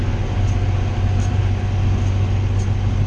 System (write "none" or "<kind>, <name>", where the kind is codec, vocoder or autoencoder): none